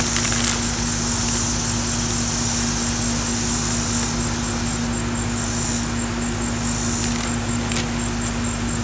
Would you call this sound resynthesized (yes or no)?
no